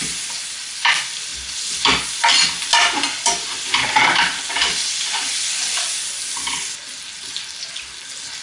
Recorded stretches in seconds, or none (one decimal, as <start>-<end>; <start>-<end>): 0.0-8.4